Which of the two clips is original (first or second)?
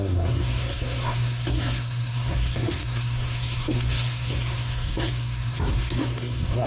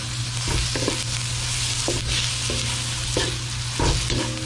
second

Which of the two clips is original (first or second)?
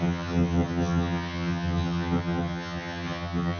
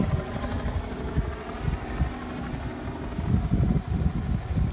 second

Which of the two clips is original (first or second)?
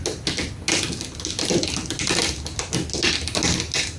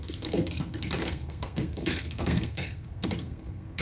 first